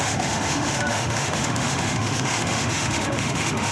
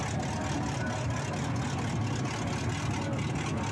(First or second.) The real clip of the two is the second